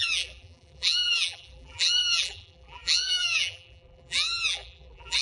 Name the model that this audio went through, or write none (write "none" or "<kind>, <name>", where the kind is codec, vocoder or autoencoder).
vocoder, BigVGAN v2